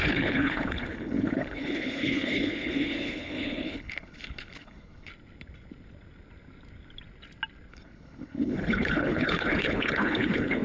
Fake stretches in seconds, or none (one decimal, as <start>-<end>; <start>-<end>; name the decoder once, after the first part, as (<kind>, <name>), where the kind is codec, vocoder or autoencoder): 0.0-5.1 (codec, HILCodec); 7.7-10.6